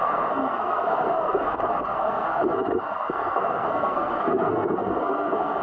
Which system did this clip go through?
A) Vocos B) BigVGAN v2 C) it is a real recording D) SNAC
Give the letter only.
D